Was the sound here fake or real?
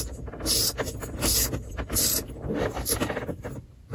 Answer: real